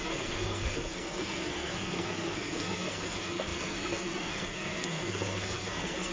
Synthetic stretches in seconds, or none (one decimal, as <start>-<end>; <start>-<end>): 0.0-6.1